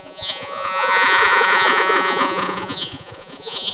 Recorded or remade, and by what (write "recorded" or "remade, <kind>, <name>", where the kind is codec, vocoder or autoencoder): remade, vocoder, Vocos